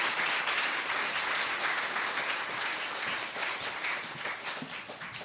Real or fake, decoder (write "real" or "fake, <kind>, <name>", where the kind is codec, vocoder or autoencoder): real